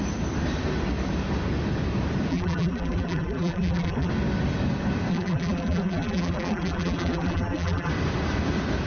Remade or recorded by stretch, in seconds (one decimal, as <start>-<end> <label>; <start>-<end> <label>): 0.0-2.3 recorded; 2.3-4.1 remade; 4.1-5.1 recorded; 5.1-7.9 remade; 7.9-8.9 recorded